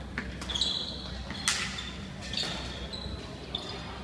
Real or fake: real